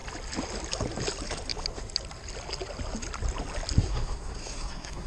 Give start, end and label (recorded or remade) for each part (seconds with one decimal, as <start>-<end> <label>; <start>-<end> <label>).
0.0-3.8 recorded; 3.8-5.1 remade